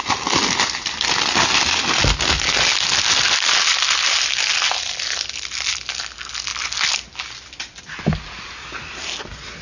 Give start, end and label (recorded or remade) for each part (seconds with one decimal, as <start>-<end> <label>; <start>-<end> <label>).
0.0-9.6 recorded